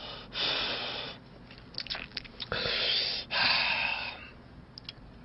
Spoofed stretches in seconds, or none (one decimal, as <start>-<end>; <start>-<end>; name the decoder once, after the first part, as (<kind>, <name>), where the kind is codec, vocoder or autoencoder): none